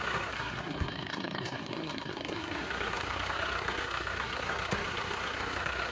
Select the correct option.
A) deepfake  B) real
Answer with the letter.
A